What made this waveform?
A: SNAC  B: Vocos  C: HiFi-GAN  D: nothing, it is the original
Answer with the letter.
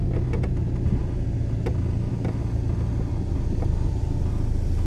D